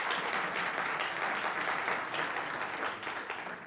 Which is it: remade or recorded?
recorded